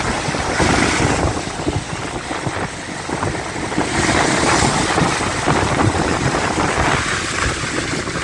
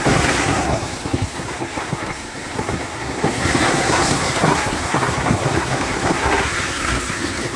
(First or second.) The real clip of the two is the first